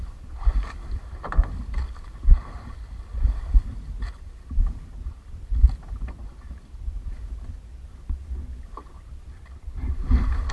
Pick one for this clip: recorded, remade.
recorded